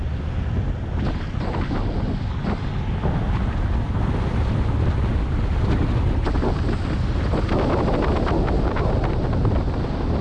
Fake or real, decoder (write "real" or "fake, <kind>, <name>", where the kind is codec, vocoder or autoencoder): real